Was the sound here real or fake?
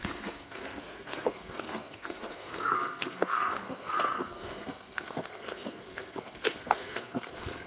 fake